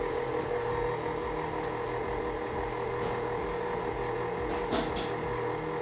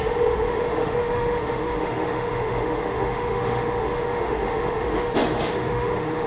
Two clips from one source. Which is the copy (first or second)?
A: second